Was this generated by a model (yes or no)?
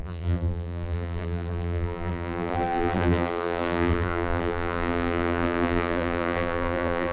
yes